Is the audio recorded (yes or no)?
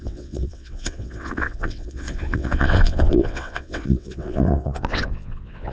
no